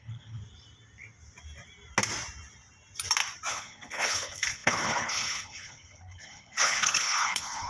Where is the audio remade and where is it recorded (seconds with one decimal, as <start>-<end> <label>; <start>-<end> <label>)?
0.0-0.4 remade; 0.4-3.5 recorded; 3.5-7.7 remade